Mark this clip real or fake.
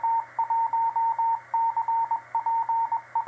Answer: real